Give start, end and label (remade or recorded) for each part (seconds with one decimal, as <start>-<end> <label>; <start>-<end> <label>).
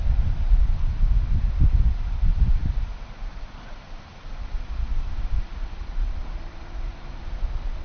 0.0-7.8 recorded